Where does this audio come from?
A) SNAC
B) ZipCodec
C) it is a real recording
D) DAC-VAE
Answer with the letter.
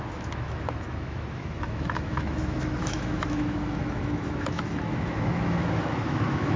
D